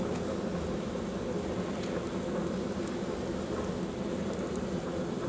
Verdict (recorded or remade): recorded